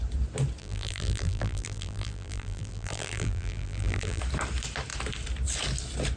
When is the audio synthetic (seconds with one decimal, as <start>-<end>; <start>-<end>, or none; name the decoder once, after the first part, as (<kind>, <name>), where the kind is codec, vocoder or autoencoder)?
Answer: 0.6-4.2 (vocoder, BigVGAN v2)